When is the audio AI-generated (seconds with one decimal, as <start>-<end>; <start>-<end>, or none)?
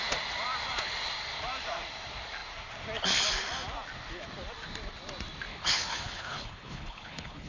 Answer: 5.5-7.5